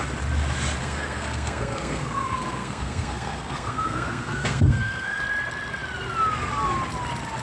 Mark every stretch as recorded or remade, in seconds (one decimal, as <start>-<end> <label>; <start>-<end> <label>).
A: 0.0-0.8 recorded; 0.8-5.2 remade; 5.2-7.4 recorded